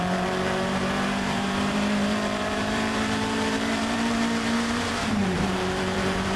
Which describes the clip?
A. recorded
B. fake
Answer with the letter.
B